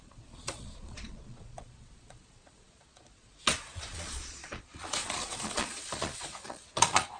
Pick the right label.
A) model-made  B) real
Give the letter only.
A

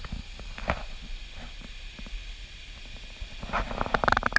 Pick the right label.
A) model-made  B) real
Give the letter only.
B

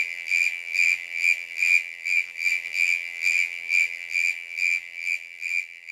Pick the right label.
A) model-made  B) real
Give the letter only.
A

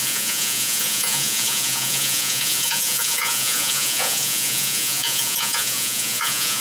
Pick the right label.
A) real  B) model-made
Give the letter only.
B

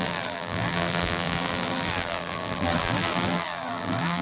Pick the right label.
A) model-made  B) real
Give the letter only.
A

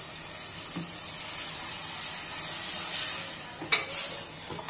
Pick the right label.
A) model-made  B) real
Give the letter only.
B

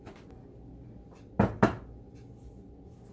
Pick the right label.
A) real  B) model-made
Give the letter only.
A